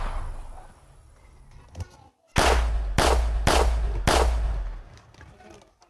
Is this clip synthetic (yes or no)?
no